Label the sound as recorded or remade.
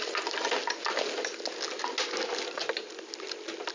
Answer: recorded